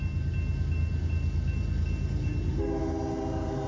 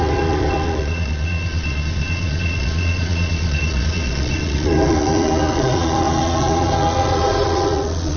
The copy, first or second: second